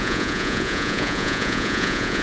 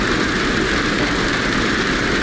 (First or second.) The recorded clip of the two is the second